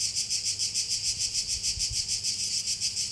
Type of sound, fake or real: real